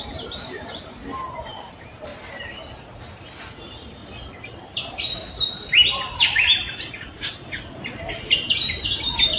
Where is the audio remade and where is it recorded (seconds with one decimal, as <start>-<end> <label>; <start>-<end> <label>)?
0.0-2.1 remade; 2.1-3.5 recorded; 3.5-4.0 remade; 4.0-4.6 recorded; 4.6-7.4 remade; 7.4-8.1 recorded; 8.1-9.4 remade